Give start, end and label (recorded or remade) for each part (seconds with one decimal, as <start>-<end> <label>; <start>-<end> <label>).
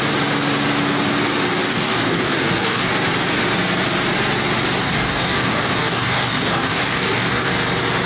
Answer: 0.0-1.7 recorded; 1.7-2.9 remade; 2.9-4.8 recorded; 4.8-7.5 remade; 7.5-8.1 recorded